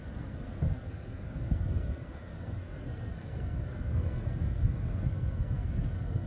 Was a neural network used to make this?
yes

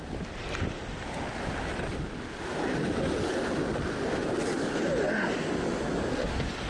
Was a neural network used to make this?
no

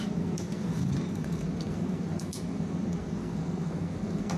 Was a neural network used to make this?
yes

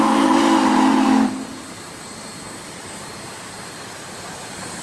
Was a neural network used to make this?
yes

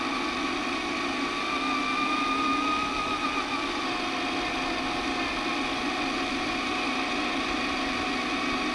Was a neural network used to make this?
no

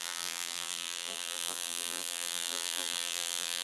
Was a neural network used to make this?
yes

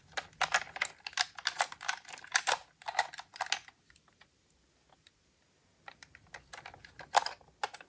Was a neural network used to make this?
no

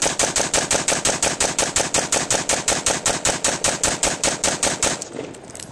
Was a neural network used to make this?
no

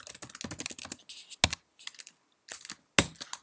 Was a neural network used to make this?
no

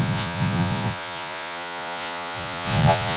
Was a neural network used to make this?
yes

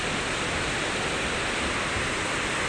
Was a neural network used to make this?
no